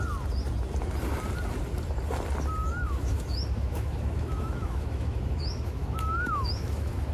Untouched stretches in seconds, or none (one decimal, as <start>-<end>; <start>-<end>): 0.0-2.6